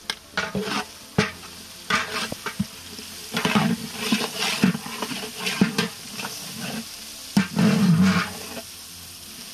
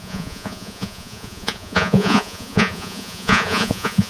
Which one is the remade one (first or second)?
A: second